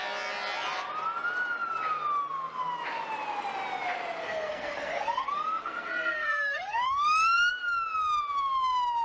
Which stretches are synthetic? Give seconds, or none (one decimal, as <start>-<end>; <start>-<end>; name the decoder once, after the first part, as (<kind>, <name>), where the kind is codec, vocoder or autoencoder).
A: 4.2-7.5 (codec, SNAC)